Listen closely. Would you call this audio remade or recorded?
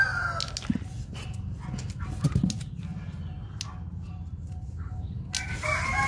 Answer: recorded